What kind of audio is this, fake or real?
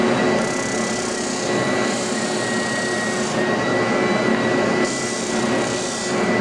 real